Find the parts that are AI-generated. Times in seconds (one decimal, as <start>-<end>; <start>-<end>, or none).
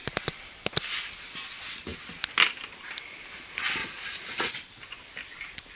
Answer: 3.8-4.5